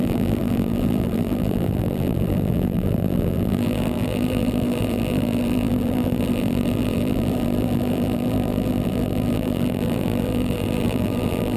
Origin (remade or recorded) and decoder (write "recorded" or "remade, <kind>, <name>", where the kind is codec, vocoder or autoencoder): remade, vocoder, BigVGAN v2